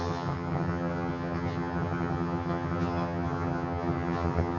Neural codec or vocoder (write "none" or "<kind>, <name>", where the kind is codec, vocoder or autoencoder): vocoder, HiFi-GAN